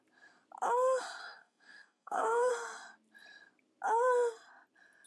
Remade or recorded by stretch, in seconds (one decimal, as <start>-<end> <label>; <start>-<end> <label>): 0.0-1.2 recorded; 1.2-2.5 remade; 2.5-5.1 recorded